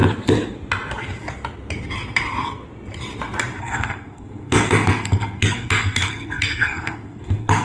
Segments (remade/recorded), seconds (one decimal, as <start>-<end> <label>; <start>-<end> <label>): 0.0-3.6 recorded; 3.6-7.6 remade